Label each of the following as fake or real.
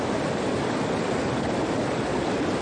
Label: real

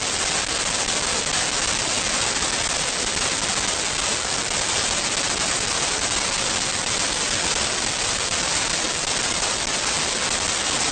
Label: real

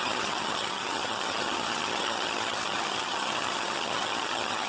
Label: fake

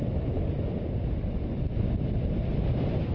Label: real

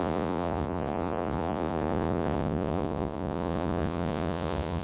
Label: fake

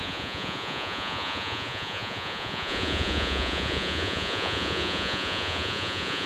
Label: fake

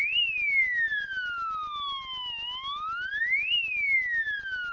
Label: real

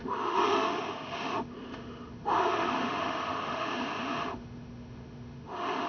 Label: fake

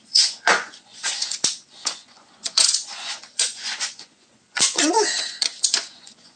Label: fake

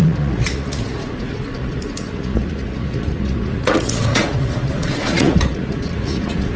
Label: fake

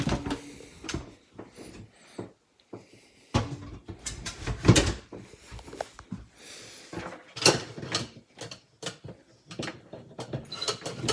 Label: real